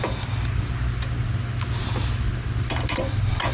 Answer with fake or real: real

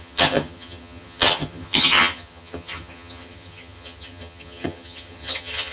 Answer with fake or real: fake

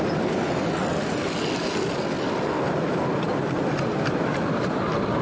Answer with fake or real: real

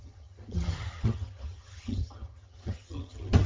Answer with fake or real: fake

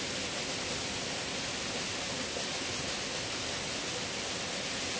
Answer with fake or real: real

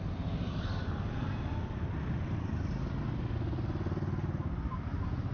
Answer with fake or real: real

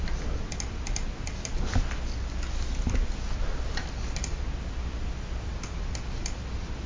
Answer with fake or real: real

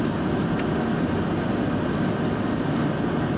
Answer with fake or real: real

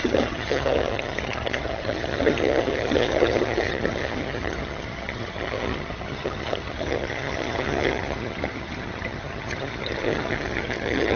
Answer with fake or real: fake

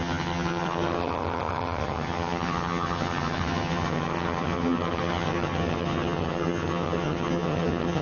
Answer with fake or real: fake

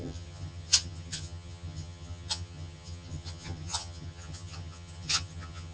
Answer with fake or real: fake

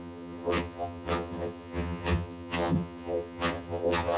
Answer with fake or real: fake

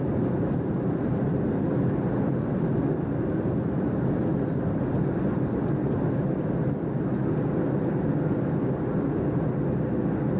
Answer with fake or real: real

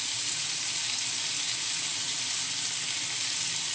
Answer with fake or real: real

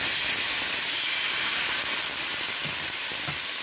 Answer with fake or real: real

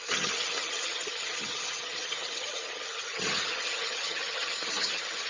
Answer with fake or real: fake